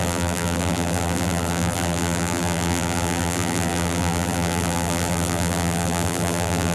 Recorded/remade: remade